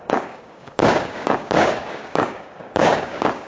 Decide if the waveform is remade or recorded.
remade